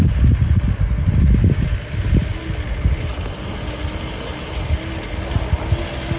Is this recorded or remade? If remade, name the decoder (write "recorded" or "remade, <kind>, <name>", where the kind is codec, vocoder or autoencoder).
recorded